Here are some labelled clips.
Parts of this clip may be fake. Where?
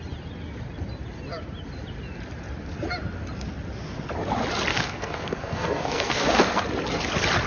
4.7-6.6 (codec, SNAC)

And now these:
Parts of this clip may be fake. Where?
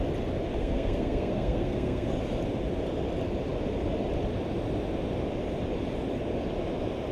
0.6-2.1 (codec, SNAC)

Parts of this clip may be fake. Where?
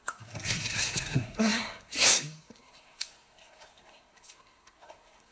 0.0-5.3 (codec, SNAC)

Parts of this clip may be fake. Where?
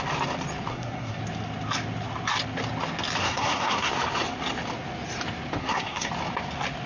0.7-1.2 (codec, SNAC); 3.2-3.9; 5.6-6.1